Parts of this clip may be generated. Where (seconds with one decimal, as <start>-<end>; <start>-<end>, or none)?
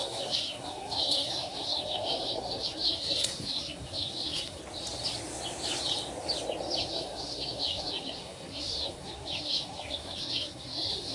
0.0-4.6; 6.8-11.1